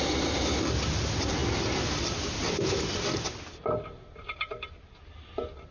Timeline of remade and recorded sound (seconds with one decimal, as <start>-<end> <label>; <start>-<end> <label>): 0.0-5.7 recorded

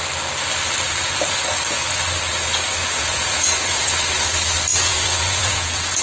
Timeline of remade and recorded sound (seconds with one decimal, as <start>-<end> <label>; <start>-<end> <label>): 0.0-2.8 recorded; 2.8-3.9 remade; 3.9-4.7 recorded; 4.7-6.0 remade